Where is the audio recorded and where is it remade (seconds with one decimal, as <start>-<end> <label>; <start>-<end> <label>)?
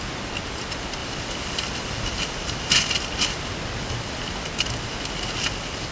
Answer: 0.0-1.0 recorded; 1.0-4.5 remade; 4.5-5.9 recorded